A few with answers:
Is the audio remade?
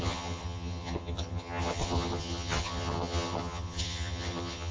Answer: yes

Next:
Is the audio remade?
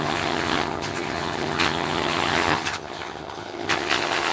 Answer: yes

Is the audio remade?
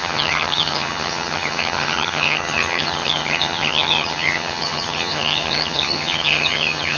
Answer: yes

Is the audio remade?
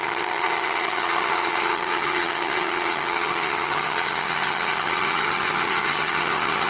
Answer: yes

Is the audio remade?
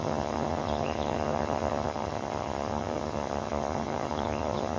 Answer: yes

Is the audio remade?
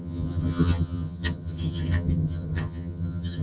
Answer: yes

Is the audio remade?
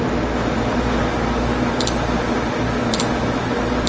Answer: no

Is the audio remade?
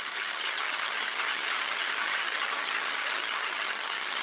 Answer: yes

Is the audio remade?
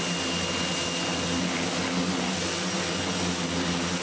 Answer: no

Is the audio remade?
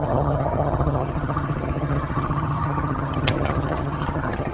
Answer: yes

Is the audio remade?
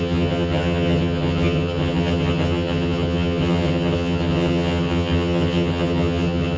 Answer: yes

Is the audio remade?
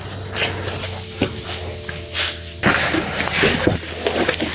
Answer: no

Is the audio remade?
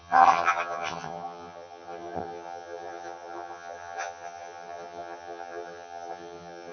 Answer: yes